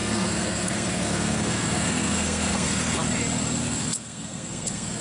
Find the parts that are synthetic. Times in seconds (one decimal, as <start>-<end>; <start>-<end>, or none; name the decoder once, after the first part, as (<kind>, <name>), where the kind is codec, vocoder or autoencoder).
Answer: 0.0-3.0 (codec, SNAC); 3.6-5.0